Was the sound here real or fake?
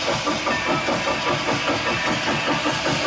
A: real